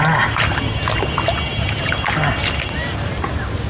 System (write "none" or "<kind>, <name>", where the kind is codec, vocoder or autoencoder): none